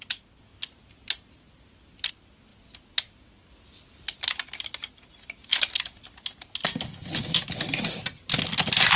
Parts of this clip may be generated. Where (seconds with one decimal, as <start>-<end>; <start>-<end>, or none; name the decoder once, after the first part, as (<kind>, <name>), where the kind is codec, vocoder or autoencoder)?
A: none